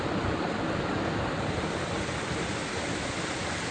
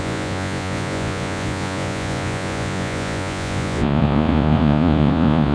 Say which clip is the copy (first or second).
second